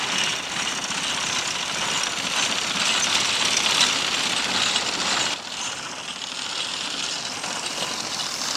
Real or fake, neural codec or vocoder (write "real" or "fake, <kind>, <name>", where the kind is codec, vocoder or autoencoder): real